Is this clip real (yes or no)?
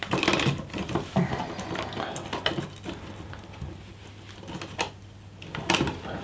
yes